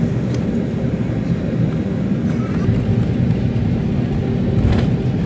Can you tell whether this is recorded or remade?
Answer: recorded